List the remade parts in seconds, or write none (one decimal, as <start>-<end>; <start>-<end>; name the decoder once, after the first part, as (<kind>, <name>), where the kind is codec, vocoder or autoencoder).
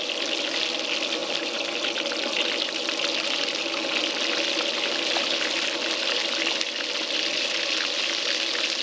none